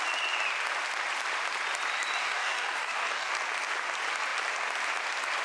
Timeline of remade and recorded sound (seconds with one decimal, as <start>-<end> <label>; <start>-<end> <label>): 0.0-2.2 recorded; 2.2-3.3 remade; 3.3-5.4 recorded